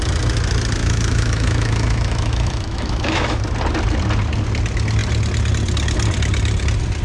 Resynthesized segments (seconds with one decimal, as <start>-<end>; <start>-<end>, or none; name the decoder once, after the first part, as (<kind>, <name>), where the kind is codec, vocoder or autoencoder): 0.8-3.4 (autoencoder, DAC-VAE)